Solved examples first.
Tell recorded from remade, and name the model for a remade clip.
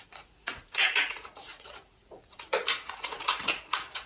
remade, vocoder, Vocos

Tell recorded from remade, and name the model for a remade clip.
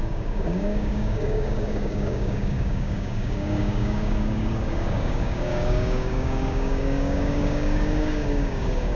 remade, codec, DAC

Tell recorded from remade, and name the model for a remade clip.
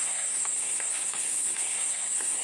remade, codec, SNAC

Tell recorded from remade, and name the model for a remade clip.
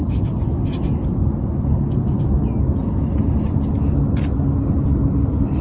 recorded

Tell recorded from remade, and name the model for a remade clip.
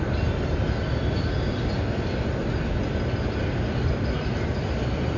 recorded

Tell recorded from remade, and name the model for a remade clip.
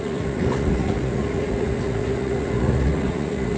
remade, vocoder, Vocos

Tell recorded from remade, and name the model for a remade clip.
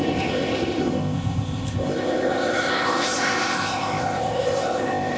remade, codec, ZipCodec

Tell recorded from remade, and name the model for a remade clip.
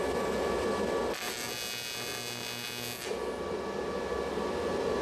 recorded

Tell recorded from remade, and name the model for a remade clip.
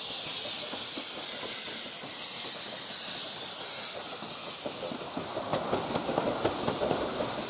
recorded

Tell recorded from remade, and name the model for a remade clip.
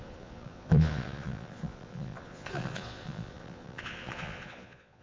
remade, vocoder, Vocos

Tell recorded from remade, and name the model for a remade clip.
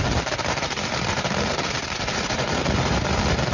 remade, vocoder, BigVGAN v2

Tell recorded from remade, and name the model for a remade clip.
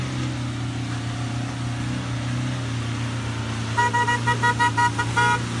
recorded